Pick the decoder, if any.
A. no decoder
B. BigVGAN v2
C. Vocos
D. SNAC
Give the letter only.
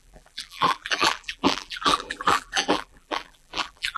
B